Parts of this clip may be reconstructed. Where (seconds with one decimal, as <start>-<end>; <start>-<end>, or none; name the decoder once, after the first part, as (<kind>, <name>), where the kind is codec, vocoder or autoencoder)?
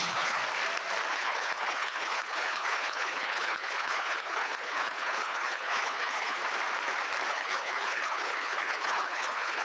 0.0-0.4 (codec, HILCodec); 1.1-6.4; 7.3-9.6